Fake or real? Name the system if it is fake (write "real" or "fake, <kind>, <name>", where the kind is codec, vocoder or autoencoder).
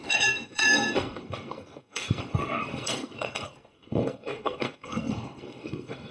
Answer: fake, codec, SNAC